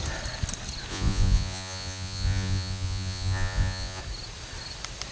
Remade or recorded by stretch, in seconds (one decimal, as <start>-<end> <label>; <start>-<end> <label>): 0.0-0.9 recorded; 0.9-4.0 remade; 4.0-5.1 recorded